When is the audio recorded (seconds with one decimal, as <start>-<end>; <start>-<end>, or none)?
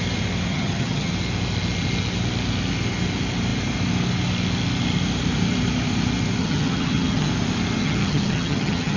0.0-0.5; 1.1-6.4; 7.3-7.8